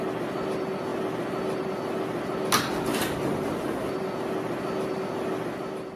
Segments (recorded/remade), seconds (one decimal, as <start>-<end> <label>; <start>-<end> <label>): 0.0-6.0 recorded